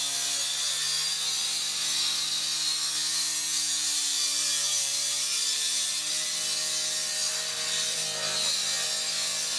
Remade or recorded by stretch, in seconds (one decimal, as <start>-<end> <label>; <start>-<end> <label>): 0.0-3.1 recorded; 3.1-6.1 remade; 6.1-9.6 recorded